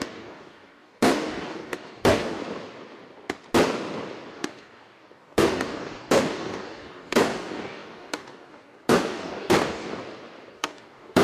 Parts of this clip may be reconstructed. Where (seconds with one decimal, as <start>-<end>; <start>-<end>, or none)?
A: 0.0-2.4; 4.3-10.0; 10.5-11.2